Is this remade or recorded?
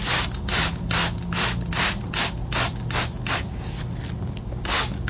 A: recorded